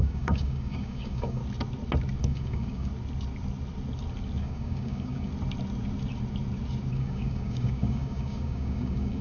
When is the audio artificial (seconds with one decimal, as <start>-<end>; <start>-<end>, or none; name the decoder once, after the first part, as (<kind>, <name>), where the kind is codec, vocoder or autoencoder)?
0.0-1.4 (codec, DAC); 2.2-2.9; 4.4-5.3; 6.9-9.2